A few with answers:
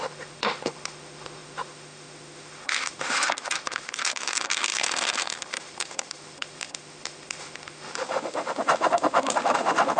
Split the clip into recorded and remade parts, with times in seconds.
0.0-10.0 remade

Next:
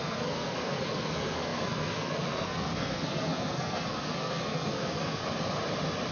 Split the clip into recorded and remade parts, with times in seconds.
0.0-5.2 remade; 5.2-6.1 recorded

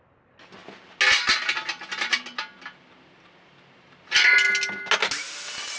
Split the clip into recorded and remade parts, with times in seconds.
0.0-5.8 recorded

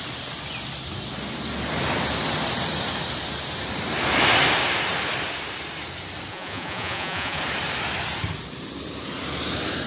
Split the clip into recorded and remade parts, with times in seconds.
0.0-6.3 recorded; 6.3-7.4 remade; 7.4-9.9 recorded